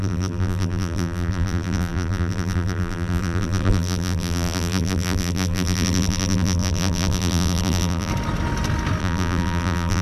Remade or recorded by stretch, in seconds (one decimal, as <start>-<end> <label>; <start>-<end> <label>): 0.0-8.1 remade; 8.1-9.0 recorded; 9.0-10.0 remade